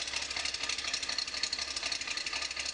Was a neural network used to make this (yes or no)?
yes